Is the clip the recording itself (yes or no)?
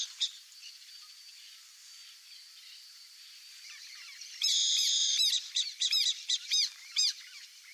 no